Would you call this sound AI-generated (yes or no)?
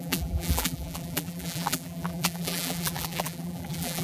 yes